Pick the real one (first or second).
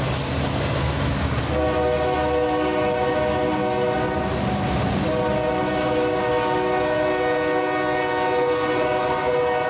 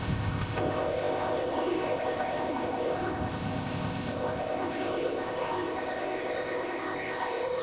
first